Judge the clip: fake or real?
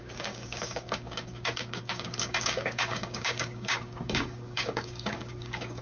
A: fake